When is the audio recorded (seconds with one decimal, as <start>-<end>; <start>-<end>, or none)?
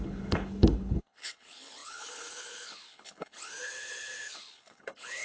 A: none